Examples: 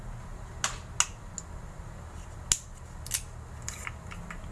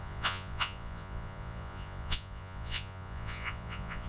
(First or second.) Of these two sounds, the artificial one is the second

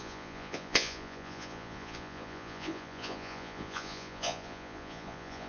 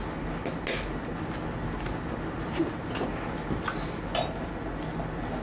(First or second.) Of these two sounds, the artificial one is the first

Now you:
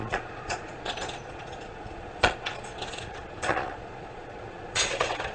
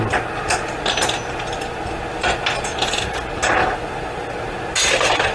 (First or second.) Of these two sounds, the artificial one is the first